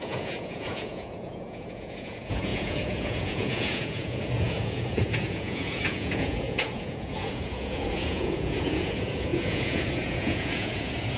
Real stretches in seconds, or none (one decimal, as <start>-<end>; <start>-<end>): none